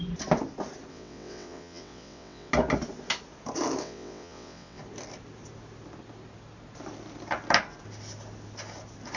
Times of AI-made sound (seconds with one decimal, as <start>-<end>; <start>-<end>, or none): 0.9-2.5; 3.8-4.8